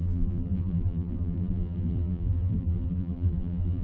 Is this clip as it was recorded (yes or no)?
no